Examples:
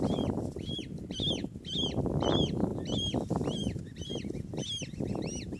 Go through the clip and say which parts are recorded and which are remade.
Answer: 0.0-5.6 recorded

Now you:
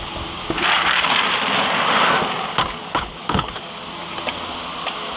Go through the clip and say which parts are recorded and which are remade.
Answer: 0.0-2.8 recorded; 2.8-3.6 remade; 3.6-5.2 recorded

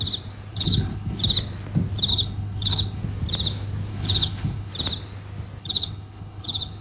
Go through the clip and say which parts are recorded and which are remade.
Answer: 0.0-0.5 recorded; 0.5-1.2 remade; 1.2-2.1 recorded; 2.1-3.0 remade; 3.0-3.9 recorded; 3.9-4.7 remade; 4.7-5.6 recorded; 5.6-6.8 remade

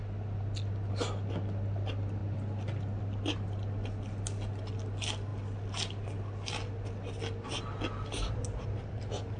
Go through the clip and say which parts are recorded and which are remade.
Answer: 0.0-9.4 recorded

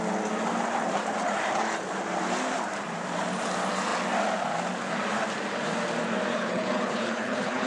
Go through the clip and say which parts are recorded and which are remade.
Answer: 0.0-6.3 recorded; 6.3-7.7 remade